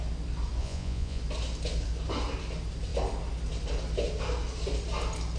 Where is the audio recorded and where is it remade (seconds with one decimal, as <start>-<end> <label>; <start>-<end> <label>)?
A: 0.0-0.6 recorded; 0.6-1.2 remade; 1.2-5.4 recorded